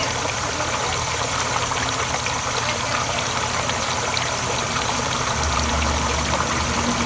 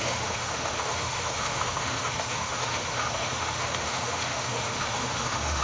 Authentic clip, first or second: first